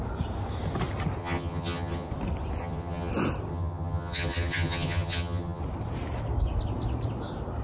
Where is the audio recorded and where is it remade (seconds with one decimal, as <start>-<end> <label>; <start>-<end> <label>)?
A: 0.0-1.2 recorded; 1.2-2.1 remade; 2.1-2.6 recorded; 2.6-3.1 remade; 3.1-3.5 recorded; 3.5-5.6 remade; 5.6-7.6 recorded